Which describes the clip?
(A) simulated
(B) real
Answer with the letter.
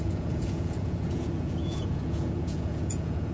A